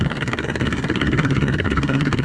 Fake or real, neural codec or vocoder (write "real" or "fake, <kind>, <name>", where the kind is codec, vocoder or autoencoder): fake, codec, SNAC